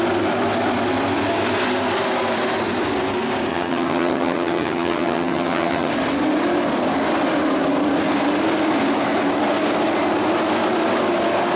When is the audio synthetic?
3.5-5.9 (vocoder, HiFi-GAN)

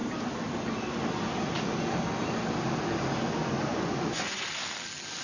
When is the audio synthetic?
3.7-4.4 (vocoder, Vocos)

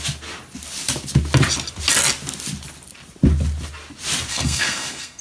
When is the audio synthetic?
4.3-5.2 (codec, SNAC)

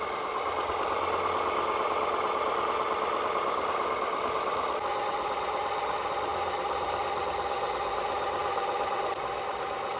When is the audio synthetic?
none